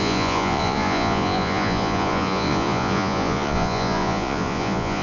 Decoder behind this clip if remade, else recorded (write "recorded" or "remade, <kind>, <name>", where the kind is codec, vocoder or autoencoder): remade, vocoder, Vocos